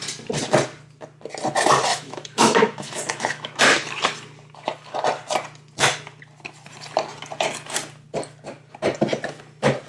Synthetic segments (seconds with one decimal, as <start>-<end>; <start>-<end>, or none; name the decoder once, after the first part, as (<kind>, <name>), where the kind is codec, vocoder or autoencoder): 1.9-3.6 (autoencoder, DAC-VAE)

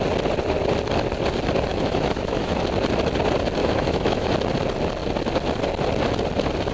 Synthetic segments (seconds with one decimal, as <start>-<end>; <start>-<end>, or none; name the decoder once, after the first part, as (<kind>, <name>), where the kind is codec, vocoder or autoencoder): 1.7-2.6 (autoencoder, DAC-VAE); 3.6-4.3

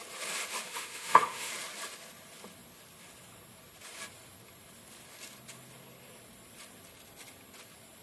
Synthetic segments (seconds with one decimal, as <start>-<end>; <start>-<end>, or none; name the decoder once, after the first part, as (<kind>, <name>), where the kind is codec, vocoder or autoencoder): 0.7-1.5 (autoencoder, DAC-VAE)